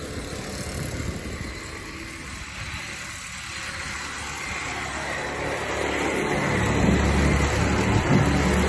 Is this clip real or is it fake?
real